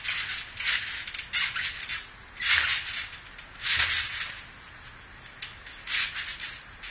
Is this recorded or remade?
recorded